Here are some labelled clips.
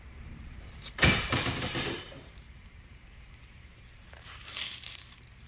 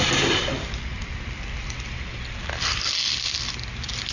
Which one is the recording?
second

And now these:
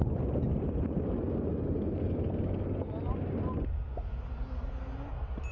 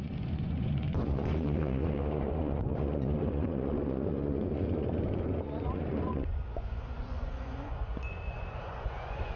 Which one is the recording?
first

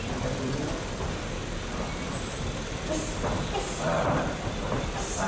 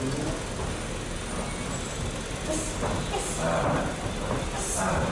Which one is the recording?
second